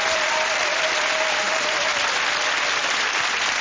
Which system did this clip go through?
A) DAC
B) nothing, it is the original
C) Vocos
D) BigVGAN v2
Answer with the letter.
D